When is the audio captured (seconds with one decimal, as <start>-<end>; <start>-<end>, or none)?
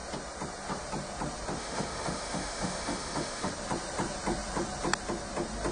0.0-1.6; 3.5-5.7